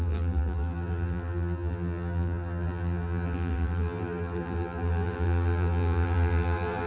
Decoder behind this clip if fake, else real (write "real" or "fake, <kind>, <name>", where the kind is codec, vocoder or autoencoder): fake, vocoder, BigVGAN v2